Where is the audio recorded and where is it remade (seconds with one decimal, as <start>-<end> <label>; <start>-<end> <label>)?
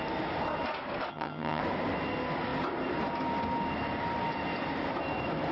0.0-1.1 recorded; 1.1-1.6 remade; 1.6-5.5 recorded